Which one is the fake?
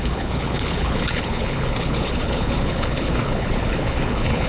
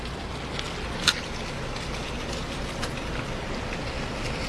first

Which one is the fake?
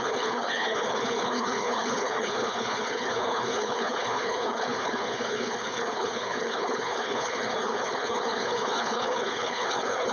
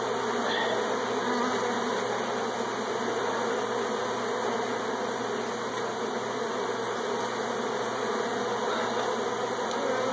first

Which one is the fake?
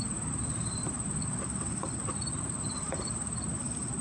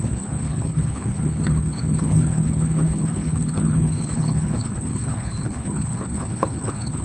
second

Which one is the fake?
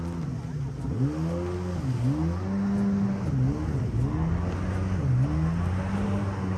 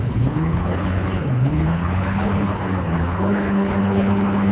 second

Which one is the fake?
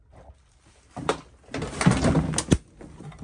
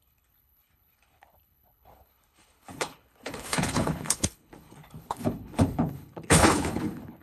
second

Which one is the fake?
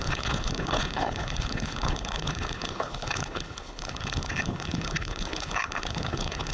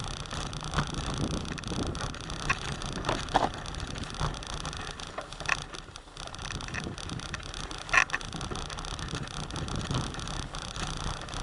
first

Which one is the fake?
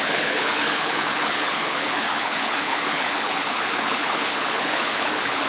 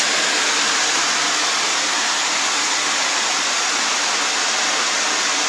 first